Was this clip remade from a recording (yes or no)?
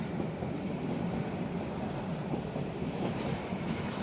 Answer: no